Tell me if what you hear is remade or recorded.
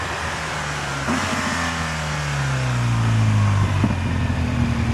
recorded